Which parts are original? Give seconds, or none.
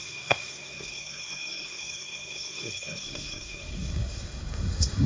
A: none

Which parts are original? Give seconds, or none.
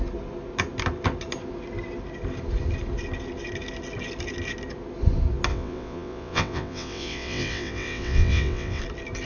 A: 0.0-5.5; 8.8-9.3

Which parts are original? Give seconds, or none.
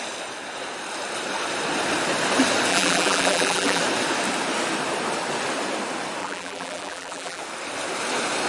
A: 0.0-2.7; 3.8-6.2; 7.4-8.5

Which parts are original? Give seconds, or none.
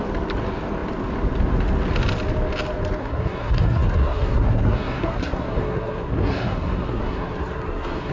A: 0.0-3.0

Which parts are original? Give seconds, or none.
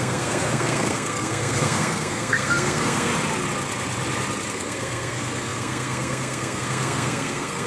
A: 3.1-4.5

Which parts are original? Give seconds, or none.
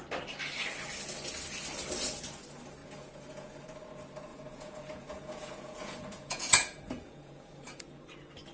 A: 0.0-2.8; 3.6-4.3; 7.8-8.5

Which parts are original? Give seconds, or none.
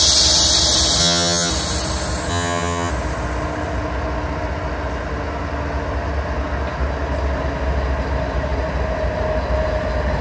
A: 0.0-1.0; 1.5-2.3; 2.9-10.2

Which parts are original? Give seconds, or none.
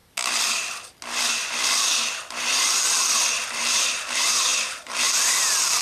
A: 0.0-3.5